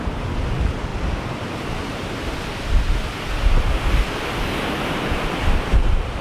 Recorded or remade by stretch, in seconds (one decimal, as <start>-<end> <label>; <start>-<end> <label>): 0.0-6.2 recorded